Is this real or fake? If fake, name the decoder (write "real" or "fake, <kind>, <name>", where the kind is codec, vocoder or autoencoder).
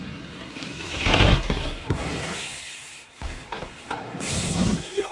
fake, codec, SNAC